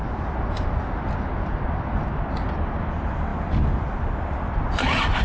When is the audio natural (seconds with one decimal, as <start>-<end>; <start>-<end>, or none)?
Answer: 0.0-5.2